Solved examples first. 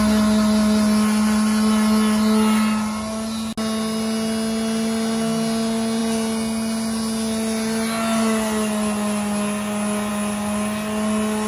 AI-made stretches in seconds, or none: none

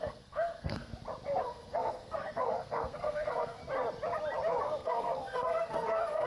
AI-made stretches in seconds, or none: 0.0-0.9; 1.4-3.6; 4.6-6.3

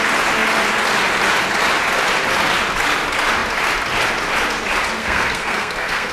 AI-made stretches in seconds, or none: 5.0-6.1

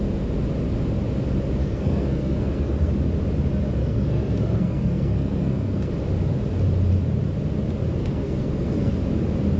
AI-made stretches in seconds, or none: 1.6-2.9; 3.8-5.9; 8.0-8.9